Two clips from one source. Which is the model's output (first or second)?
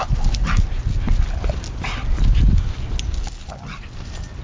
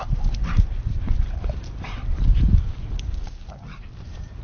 second